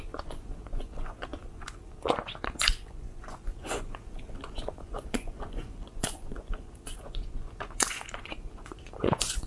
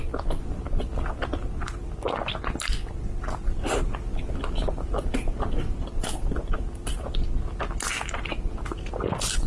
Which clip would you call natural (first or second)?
second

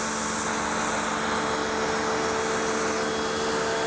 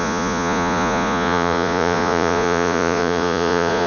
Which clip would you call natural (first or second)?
first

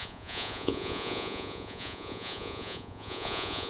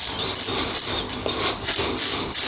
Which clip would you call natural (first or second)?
second